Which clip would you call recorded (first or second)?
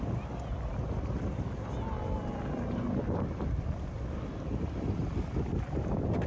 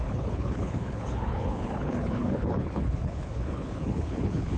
first